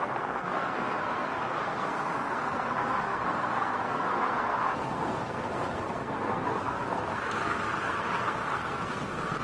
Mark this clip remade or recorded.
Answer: remade